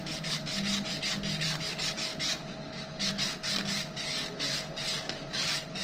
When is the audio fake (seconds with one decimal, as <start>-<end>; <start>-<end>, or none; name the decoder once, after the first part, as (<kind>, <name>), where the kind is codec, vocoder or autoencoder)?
0.0-0.7 (vocoder, BigVGAN v2)